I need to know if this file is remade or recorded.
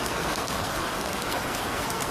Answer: remade